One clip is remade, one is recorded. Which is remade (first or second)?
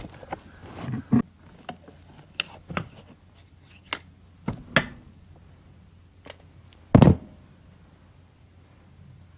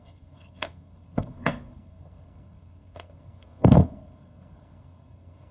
second